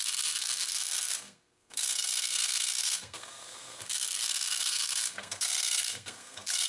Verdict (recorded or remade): remade